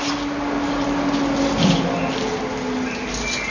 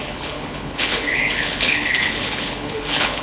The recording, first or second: first